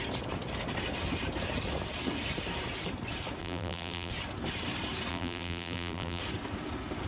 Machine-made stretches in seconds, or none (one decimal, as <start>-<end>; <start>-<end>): 3.4-4.1; 5.1-6.2